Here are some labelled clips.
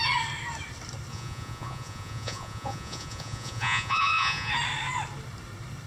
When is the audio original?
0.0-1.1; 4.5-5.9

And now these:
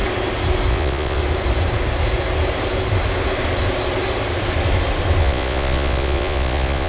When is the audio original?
0.0-0.7; 1.2-5.2

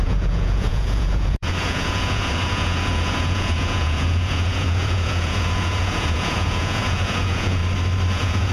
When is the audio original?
7.6-8.1

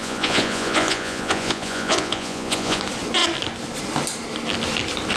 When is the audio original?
2.8-5.2